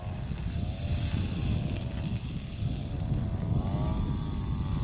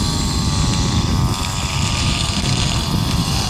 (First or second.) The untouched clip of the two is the first